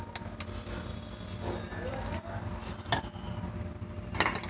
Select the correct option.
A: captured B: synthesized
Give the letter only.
A